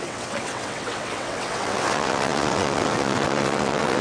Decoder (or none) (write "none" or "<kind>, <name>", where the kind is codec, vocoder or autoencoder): vocoder, WaveNeXt